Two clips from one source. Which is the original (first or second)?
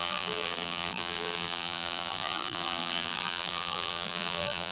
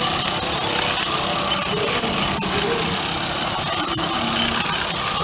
second